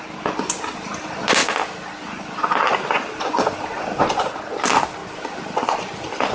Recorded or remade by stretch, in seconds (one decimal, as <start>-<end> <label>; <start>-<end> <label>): 0.0-6.3 recorded